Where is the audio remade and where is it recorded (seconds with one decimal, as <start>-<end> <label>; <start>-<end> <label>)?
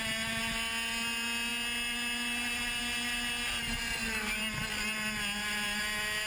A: 0.0-6.3 recorded